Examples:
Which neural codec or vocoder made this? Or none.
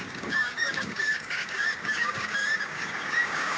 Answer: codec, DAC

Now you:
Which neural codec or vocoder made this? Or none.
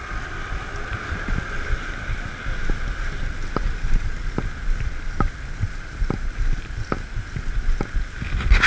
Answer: none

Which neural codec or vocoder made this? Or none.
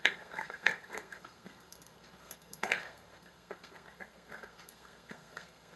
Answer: codec, SNAC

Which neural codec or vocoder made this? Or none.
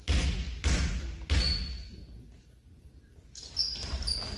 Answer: none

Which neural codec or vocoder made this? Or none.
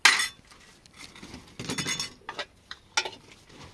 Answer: none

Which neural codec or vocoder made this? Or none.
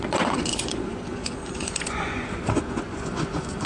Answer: vocoder, Vocos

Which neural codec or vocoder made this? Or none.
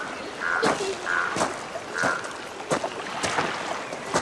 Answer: none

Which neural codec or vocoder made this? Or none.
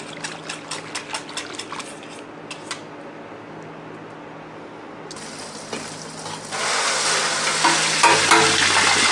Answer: none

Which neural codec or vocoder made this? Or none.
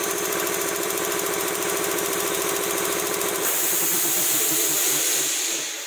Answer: vocoder, BigVGAN v2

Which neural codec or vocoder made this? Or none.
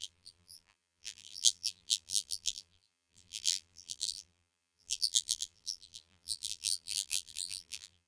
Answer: vocoder, BigVGAN v2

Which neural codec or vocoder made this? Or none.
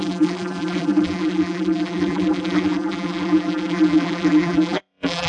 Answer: vocoder, BigVGAN v2